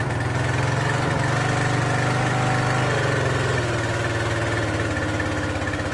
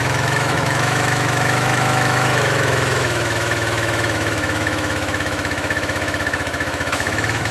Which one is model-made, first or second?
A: second